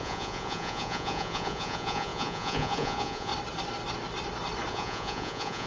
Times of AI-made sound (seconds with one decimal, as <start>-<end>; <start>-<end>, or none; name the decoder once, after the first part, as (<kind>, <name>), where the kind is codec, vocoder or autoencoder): 0.0-3.3 (vocoder, Vocos); 4.7-5.7